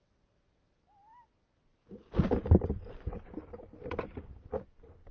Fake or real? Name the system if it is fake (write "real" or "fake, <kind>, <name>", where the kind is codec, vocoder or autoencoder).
fake, vocoder, BigVGAN v2